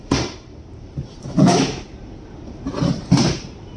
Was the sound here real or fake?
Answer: fake